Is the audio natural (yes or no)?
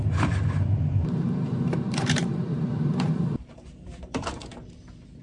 no